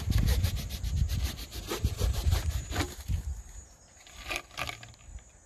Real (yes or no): yes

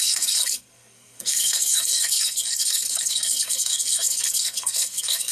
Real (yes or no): no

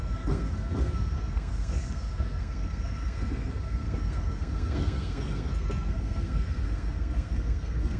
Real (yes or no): no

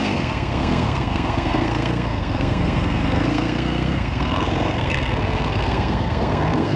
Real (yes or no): no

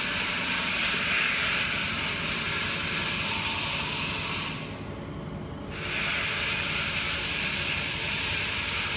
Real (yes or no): yes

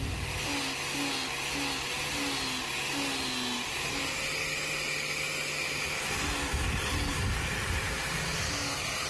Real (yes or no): yes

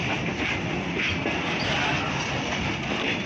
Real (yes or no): yes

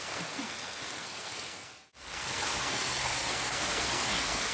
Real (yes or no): no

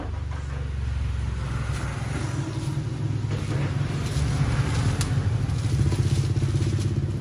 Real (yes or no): yes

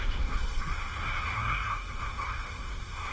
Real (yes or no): no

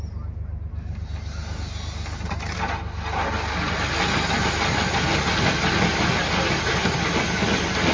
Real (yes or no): yes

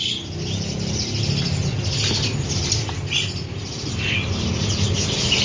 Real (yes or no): yes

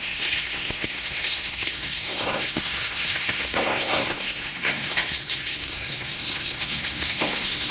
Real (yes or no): no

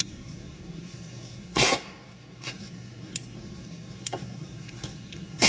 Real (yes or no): no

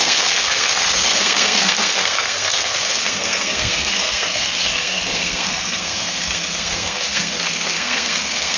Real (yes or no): no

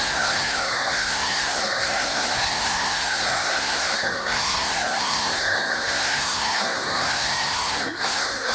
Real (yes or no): no